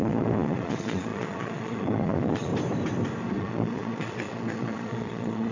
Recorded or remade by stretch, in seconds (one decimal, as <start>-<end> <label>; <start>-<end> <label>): 0.0-2.5 remade; 2.5-3.3 recorded; 3.3-5.5 remade